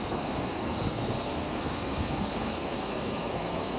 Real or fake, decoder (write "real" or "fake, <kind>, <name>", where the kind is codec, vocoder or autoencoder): fake, codec, SNAC